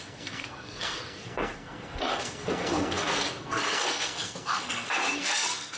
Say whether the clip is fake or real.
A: fake